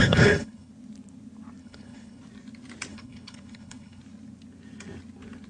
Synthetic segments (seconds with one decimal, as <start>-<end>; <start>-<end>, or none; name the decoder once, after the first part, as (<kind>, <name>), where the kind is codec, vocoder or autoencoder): 0.0-0.7 (codec, HILCodec); 1.6-2.2; 2.9-4.0